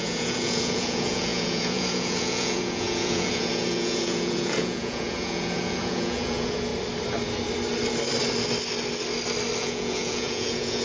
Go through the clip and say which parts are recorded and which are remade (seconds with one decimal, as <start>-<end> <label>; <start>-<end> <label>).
0.0-6.7 remade; 6.7-9.6 recorded; 9.6-10.8 remade